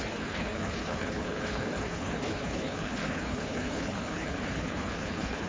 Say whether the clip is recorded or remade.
remade